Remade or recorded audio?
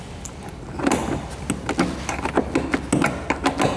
recorded